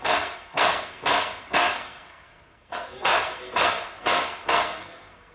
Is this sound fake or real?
fake